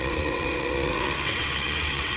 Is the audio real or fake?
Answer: fake